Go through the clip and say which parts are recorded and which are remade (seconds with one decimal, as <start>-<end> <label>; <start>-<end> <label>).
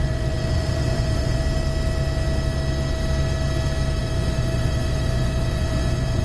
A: 0.0-1.4 remade; 1.4-4.0 recorded; 4.0-6.2 remade